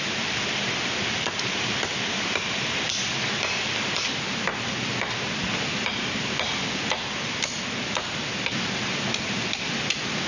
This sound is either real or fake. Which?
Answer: real